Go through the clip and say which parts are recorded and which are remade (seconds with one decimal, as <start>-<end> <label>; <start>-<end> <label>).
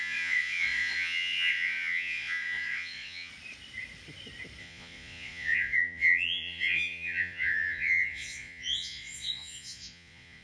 0.0-3.3 remade; 3.3-4.6 recorded; 4.6-10.4 remade